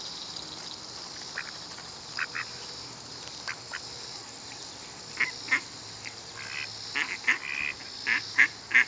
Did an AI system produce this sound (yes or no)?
no